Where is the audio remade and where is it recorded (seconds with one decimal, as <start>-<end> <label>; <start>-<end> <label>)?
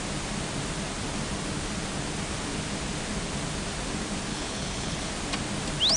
0.0-4.3 recorded; 4.3-5.1 remade; 5.1-6.0 recorded